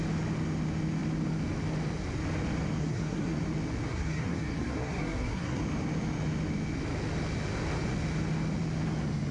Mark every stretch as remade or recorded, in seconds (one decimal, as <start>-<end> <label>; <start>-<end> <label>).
0.0-2.8 recorded; 2.8-3.4 remade; 3.4-3.9 recorded; 3.9-5.6 remade; 5.6-9.3 recorded